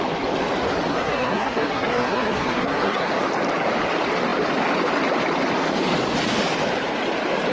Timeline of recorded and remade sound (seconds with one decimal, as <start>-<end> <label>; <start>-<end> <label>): 0.0-0.9 recorded; 0.9-3.1 remade; 3.1-7.5 recorded